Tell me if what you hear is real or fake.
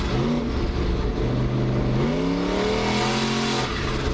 real